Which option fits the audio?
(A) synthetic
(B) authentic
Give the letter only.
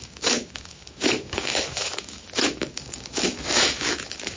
A